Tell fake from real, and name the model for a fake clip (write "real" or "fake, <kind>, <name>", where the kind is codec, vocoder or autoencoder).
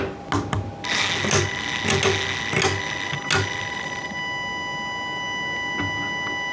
real